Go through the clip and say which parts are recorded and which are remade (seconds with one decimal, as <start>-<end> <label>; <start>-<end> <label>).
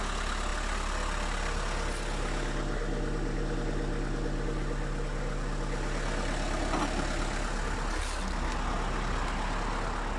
0.0-10.2 recorded